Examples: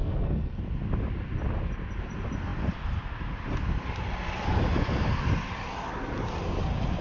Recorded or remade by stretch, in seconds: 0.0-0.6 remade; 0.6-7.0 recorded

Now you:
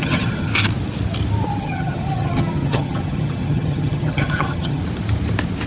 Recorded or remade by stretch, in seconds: 0.0-0.5 remade; 0.5-1.6 recorded; 1.6-4.8 remade; 4.8-5.7 recorded